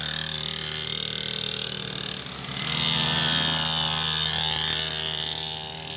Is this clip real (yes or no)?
yes